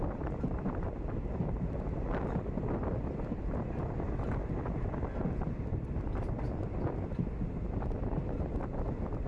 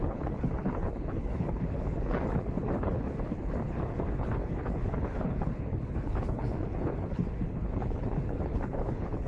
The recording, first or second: first